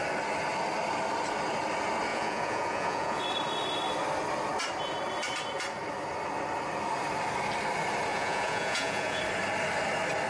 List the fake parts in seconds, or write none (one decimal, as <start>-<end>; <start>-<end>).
2.1-3.2; 8.1-9.2